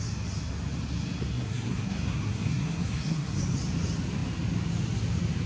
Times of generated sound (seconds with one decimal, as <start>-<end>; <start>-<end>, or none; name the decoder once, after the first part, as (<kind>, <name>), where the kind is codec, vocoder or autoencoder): 1.2-3.4 (codec, SNAC)